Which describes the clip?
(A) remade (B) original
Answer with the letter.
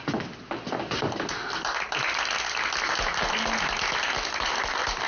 B